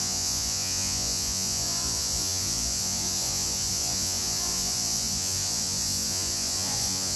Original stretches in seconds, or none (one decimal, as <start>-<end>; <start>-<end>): none